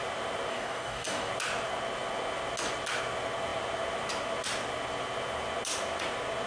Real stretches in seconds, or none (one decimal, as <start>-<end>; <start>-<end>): 0.0-0.5; 1.3-6.5